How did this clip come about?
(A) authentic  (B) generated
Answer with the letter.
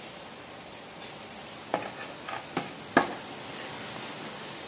A